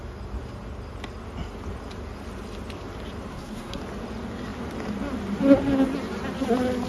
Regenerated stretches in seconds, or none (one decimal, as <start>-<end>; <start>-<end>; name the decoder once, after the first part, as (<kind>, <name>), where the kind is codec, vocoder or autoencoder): 3.3-3.8 (codec, SNAC)